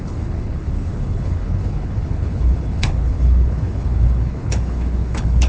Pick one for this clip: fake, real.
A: fake